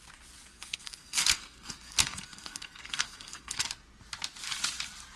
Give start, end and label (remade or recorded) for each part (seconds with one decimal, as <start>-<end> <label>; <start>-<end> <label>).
0.0-0.5 recorded; 0.5-3.6 remade; 3.6-5.2 recorded